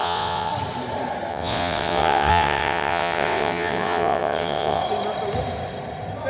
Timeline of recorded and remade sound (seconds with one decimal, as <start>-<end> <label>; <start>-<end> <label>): 0.0-0.5 remade; 0.5-1.3 recorded; 1.3-4.8 remade; 4.8-6.3 recorded